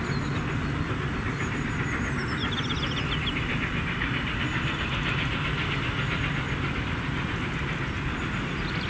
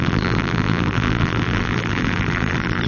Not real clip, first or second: second